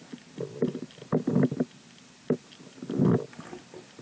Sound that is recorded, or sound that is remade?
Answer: recorded